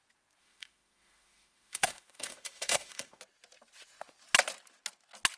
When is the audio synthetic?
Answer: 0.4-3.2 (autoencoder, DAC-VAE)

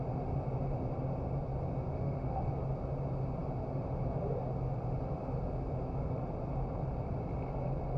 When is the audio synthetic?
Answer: 1.9-2.4 (autoencoder, DAC-VAE)